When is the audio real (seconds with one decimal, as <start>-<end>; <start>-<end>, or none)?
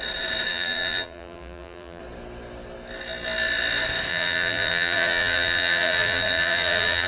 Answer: 0.0-0.5; 2.0-4.1